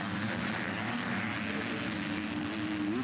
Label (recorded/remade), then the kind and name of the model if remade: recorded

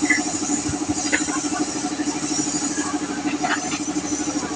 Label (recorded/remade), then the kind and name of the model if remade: recorded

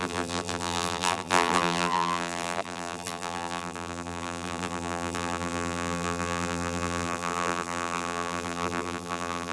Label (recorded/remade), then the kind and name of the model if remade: remade, vocoder, BigVGAN v2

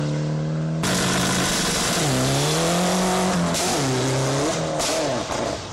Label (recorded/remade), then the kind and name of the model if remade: recorded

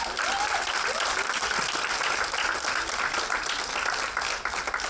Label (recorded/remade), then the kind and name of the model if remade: recorded